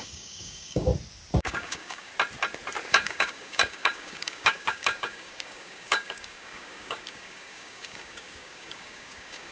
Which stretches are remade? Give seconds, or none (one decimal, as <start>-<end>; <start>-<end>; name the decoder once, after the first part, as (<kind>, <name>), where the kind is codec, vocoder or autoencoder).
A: 0.0-0.9 (codec, DAC); 1.4-2.1; 2.9-9.5